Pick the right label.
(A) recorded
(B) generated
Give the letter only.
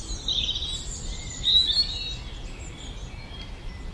A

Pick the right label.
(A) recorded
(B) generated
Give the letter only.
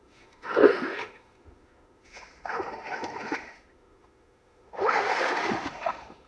B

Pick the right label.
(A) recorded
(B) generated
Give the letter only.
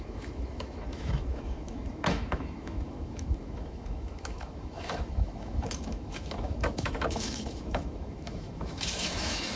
B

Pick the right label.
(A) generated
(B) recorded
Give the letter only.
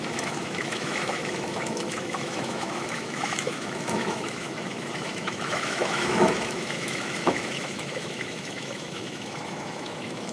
A